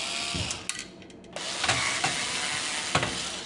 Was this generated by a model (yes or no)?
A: no